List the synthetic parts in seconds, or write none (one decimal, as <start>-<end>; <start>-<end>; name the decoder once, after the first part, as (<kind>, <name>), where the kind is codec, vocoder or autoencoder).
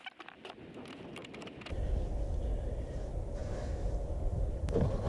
3.4-3.9 (codec, DAC)